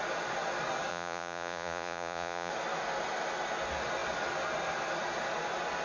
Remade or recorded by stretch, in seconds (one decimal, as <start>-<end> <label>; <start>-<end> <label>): 0.0-0.9 recorded; 0.9-2.5 remade; 2.5-5.8 recorded